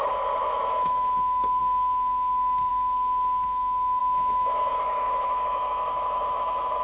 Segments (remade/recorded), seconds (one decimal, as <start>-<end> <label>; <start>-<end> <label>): 0.0-6.8 remade

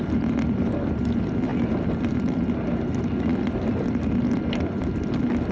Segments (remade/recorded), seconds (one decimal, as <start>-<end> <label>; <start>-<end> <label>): 0.0-5.5 recorded

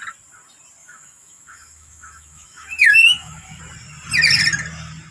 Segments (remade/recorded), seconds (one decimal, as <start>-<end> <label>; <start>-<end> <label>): 0.0-0.8 recorded; 0.8-3.6 remade; 3.6-5.1 recorded

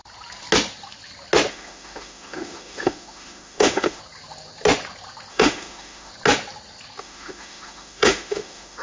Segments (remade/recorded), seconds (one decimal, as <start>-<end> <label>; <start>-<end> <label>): 0.0-1.5 recorded; 1.5-4.0 remade; 4.0-5.3 recorded; 5.3-6.1 remade; 6.1-7.0 recorded; 7.0-8.8 remade

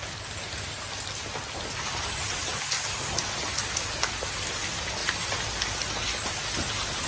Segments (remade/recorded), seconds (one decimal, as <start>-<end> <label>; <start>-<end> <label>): 0.0-7.1 recorded

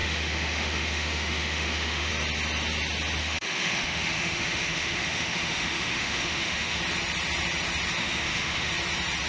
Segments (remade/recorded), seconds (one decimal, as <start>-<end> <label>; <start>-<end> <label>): 0.0-2.1 remade; 2.1-3.2 recorded; 3.2-6.8 remade; 6.8-8.0 recorded; 8.0-8.7 remade; 8.7-9.3 recorded